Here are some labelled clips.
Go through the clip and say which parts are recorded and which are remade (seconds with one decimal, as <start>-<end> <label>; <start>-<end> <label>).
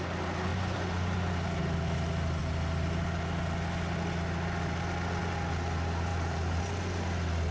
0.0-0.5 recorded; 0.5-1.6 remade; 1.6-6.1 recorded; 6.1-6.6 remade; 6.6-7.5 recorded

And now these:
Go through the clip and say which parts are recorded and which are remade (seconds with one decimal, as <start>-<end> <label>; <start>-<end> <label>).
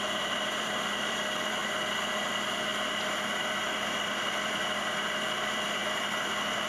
0.0-1.6 remade; 1.6-2.3 recorded; 2.3-2.7 remade; 2.7-3.4 recorded; 3.4-5.8 remade; 5.8-6.7 recorded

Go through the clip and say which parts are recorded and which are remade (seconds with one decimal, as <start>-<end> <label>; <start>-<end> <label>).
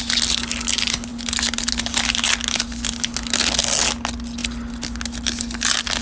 0.0-6.0 recorded